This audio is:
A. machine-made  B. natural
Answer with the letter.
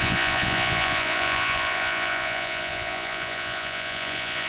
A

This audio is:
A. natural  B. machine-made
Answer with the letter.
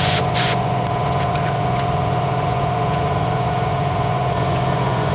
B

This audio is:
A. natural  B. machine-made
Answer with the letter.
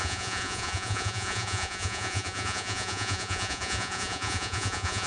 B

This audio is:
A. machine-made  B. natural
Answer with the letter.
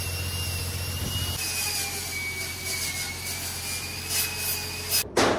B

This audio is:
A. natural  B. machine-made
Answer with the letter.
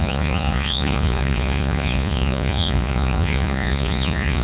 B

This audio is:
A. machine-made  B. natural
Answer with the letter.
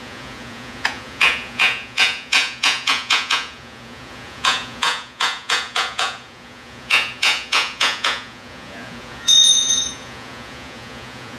A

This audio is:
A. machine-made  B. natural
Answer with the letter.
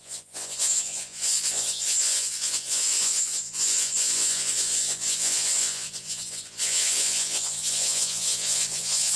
A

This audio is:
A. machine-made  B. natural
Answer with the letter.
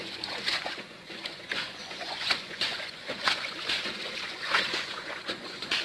A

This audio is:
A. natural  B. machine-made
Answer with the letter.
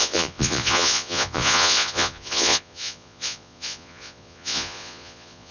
B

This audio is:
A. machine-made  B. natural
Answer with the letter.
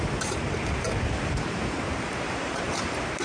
B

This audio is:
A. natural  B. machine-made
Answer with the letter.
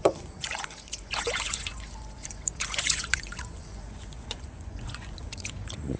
B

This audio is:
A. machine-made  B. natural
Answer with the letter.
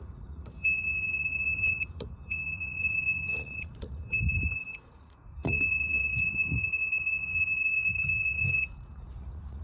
A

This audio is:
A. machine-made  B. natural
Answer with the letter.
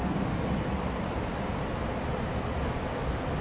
B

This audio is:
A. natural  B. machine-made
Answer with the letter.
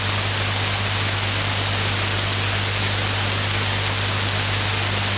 A